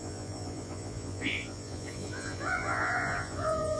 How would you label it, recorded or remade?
remade